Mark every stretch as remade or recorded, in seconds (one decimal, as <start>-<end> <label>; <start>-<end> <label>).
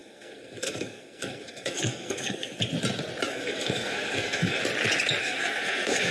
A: 0.0-2.6 remade; 2.6-3.3 recorded; 3.3-4.6 remade; 4.6-5.2 recorded; 5.2-6.1 remade